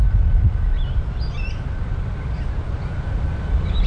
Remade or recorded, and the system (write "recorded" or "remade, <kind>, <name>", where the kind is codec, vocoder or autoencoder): recorded